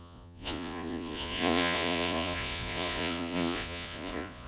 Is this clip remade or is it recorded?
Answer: remade